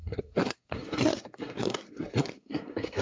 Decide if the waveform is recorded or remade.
remade